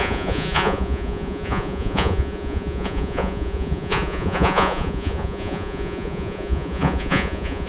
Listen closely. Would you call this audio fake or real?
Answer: fake